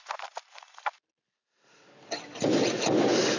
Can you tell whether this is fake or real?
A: real